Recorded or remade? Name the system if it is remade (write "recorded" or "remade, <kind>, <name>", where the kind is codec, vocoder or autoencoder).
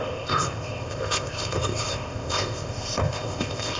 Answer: remade, codec, ZipCodec